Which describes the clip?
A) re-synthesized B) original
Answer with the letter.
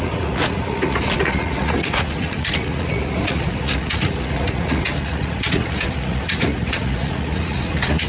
A